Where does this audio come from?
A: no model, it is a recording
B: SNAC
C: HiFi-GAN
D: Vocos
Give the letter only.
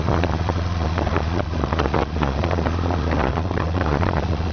D